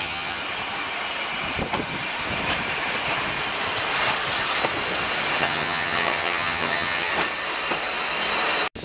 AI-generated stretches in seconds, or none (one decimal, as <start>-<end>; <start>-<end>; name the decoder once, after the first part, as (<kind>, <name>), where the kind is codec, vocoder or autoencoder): 0.0-0.4 (vocoder, HiFi-GAN); 5.4-7.1